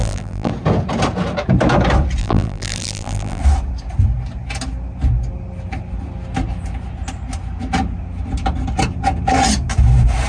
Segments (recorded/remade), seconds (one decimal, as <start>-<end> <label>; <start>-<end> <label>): 0.0-0.5 remade; 0.5-2.2 recorded; 2.2-3.4 remade; 3.4-10.3 recorded